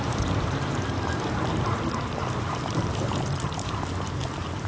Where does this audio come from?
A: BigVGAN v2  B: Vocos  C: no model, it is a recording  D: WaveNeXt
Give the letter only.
A